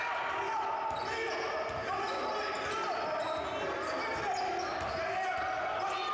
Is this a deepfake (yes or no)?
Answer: no